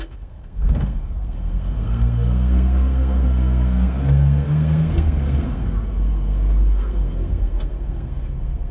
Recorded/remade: remade